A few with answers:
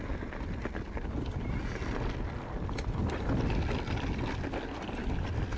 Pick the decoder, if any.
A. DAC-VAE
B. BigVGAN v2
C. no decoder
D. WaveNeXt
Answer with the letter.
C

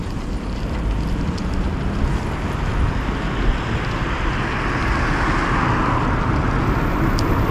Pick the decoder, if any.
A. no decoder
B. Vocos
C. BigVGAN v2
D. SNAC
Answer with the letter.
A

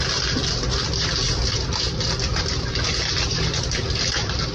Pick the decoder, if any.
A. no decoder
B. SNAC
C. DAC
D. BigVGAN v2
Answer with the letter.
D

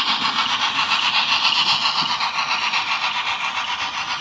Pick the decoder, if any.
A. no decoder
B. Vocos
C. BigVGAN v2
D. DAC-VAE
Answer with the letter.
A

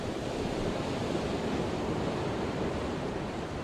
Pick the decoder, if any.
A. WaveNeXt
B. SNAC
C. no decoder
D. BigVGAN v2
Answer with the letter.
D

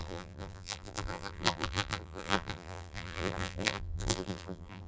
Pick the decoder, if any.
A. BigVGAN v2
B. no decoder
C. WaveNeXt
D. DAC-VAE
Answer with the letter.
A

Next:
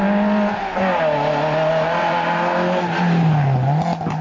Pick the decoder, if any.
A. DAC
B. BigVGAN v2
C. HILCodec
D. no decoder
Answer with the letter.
D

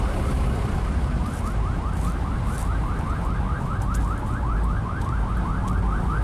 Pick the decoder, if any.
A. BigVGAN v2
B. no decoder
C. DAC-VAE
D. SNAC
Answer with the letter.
B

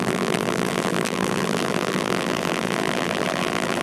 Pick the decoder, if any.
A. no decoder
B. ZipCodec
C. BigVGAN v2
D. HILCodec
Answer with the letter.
C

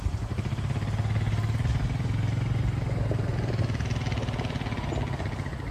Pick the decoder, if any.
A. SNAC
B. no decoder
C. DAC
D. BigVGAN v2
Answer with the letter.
B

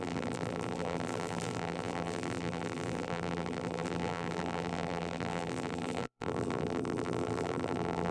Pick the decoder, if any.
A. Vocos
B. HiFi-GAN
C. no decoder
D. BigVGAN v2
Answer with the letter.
D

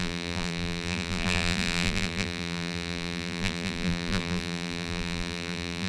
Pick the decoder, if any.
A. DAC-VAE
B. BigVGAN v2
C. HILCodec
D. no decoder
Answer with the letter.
B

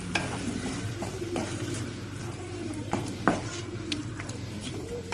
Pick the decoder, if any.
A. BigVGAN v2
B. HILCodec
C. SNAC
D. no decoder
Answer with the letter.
A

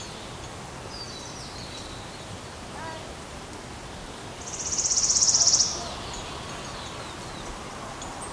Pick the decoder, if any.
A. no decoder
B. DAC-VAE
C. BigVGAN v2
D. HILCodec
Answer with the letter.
A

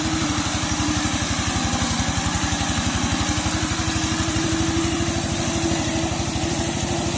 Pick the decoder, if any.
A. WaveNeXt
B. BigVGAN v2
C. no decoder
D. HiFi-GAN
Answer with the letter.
B